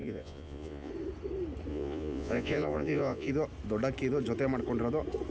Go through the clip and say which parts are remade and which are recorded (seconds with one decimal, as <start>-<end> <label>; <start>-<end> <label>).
0.0-0.9 remade; 0.9-1.7 recorded; 1.7-3.3 remade; 3.3-5.3 recorded